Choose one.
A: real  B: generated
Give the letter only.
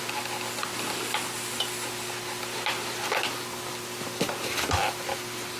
A